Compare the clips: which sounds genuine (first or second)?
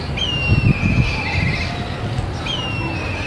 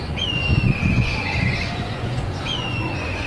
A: first